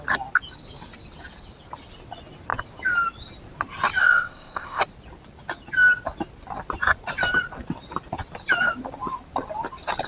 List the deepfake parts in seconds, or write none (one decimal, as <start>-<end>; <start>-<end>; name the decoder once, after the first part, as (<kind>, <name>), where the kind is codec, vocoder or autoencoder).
4.0-4.8 (codec, ZipCodec)